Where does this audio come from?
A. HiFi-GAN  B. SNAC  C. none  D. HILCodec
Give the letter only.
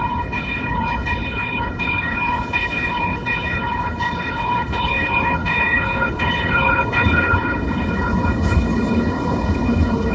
D